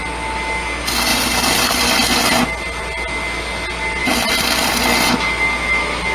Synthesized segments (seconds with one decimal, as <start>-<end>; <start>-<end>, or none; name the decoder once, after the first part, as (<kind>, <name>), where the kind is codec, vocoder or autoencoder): 1.1-2.2 (vocoder, BigVGAN v2); 4.0-4.7